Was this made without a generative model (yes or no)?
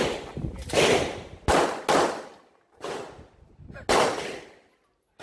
yes